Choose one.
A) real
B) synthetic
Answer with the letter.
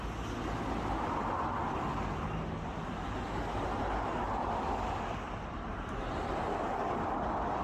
A